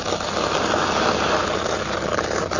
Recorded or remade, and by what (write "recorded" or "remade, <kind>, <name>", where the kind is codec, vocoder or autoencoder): recorded